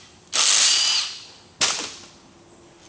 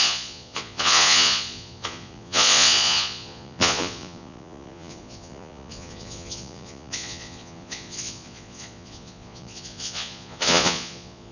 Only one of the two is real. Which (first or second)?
first